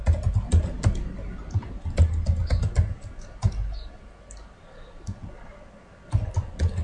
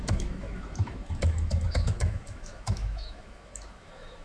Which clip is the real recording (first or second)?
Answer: first